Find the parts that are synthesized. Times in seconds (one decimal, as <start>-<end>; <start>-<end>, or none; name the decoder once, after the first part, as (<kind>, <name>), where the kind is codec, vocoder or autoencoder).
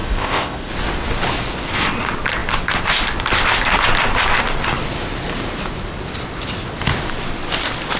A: 0.0-0.7 (codec, ZipCodec)